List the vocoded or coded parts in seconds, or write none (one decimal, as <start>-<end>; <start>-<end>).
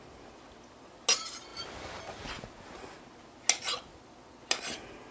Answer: none